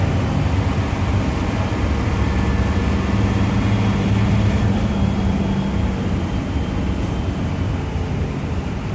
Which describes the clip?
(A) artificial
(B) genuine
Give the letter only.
B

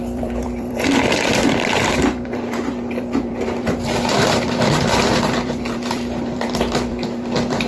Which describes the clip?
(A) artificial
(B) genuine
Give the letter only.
A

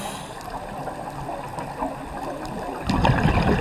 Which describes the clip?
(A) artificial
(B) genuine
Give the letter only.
B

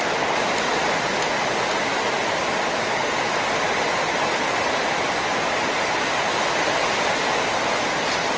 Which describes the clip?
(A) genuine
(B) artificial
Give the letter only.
A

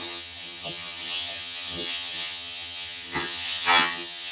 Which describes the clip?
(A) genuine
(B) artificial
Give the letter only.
B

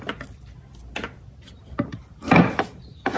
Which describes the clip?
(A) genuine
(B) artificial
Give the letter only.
A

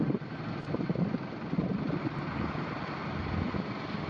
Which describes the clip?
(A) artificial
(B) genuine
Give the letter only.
B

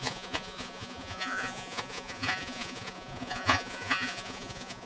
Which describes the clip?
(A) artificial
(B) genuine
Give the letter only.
A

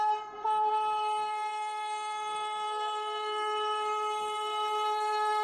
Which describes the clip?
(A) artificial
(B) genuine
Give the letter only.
A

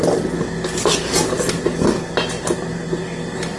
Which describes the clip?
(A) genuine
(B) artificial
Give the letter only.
A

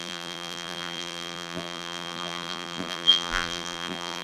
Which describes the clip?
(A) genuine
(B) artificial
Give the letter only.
B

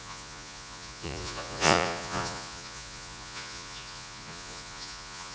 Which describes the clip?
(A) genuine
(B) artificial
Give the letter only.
B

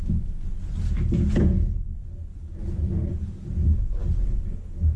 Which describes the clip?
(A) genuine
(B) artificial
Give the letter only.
A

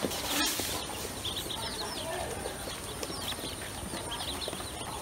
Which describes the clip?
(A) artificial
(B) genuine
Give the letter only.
B